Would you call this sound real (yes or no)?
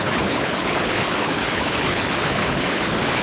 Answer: no